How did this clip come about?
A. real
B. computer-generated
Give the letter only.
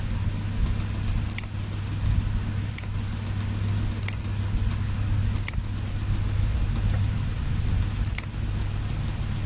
A